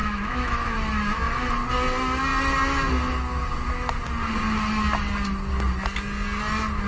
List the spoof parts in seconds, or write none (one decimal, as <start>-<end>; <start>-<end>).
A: 0.0-1.5

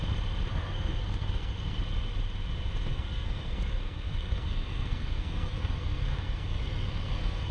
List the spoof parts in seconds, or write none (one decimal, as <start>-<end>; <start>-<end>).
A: 0.5-1.8; 2.9-7.5

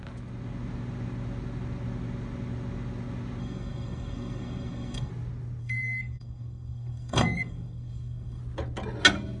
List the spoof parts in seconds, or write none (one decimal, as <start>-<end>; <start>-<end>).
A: 3.4-5.1; 5.6-8.4

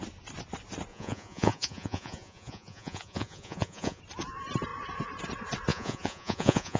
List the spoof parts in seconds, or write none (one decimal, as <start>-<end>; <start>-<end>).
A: 0.9-4.0; 5.7-6.8

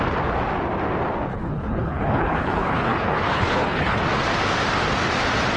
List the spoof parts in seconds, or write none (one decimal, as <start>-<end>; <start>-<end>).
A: 1.3-4.0

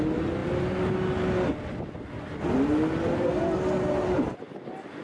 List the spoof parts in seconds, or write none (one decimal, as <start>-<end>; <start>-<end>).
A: none

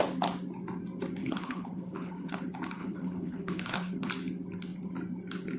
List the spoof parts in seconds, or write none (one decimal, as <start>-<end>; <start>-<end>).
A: 1.2-2.3; 2.8-4.1

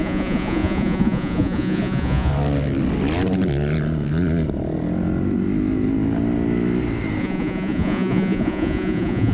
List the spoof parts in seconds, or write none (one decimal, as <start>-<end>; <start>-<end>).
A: 0.0-2.3; 7.2-9.3